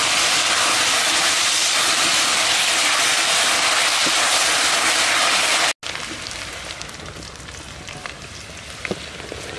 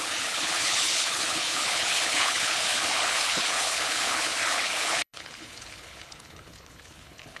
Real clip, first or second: first